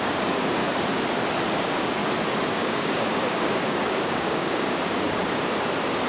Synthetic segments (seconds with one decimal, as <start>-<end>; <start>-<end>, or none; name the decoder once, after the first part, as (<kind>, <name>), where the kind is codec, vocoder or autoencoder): 0.0-0.6 (codec, DAC); 1.6-2.0; 2.5-5.2